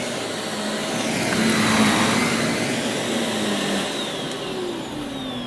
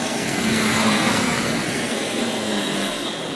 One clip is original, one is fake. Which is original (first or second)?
first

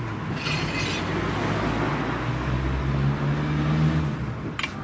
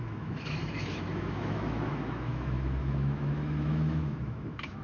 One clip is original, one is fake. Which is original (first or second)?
first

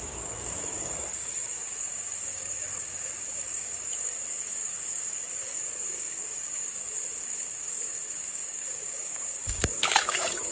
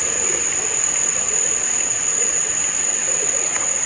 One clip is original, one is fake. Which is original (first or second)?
second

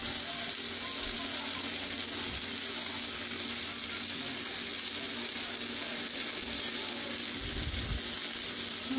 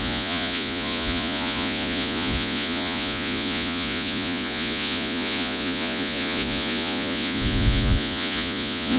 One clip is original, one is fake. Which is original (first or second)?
first